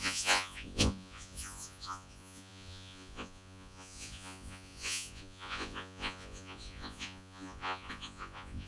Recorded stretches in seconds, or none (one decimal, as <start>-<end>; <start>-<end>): none

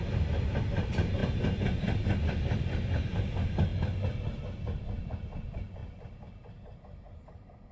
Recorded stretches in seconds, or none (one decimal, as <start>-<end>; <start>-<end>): 0.0-7.7

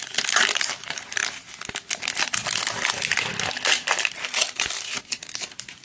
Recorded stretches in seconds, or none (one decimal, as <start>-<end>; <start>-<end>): 1.2-3.5

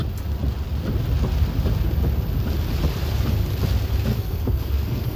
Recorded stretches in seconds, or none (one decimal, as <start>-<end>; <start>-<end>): 0.0-4.1

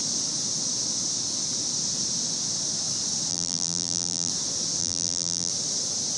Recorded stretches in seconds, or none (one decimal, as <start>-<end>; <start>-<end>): 0.0-3.3; 4.3-4.8; 5.5-6.2

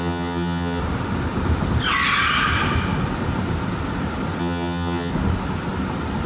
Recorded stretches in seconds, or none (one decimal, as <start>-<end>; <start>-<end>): 0.8-4.4; 5.1-6.3